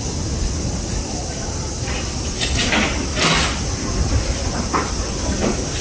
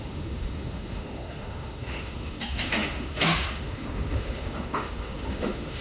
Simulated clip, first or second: second